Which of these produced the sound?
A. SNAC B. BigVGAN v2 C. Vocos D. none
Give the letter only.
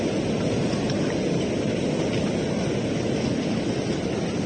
D